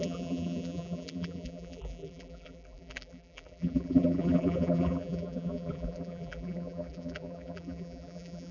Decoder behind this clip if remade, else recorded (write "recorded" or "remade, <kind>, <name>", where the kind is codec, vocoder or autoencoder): remade, vocoder, BigVGAN v2